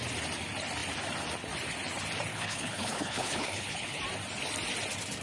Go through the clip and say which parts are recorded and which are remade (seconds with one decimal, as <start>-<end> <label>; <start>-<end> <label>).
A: 0.0-2.3 recorded; 2.3-4.0 remade; 4.0-5.2 recorded